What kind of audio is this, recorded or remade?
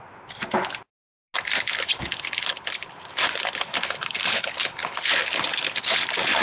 recorded